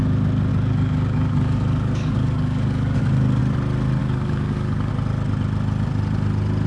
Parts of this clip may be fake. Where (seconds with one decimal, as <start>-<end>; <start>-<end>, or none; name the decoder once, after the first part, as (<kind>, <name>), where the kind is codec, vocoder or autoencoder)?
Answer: 0.5-3.4 (codec, DAC); 4.0-4.9